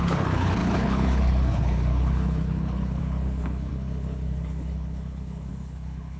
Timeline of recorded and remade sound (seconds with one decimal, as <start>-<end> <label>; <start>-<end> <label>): 0.0-6.2 remade